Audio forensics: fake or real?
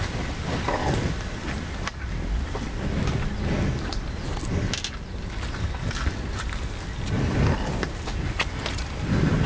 real